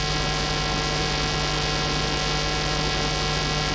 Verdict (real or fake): real